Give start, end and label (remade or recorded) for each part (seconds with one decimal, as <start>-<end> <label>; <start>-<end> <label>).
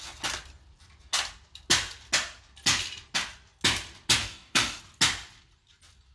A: 0.0-4.2 recorded; 4.2-4.8 remade; 4.8-6.1 recorded